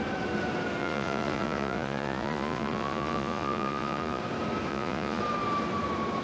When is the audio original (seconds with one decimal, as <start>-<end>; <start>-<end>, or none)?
0.0-0.8; 4.2-4.7; 5.2-6.2